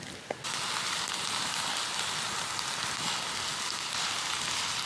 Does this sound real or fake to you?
real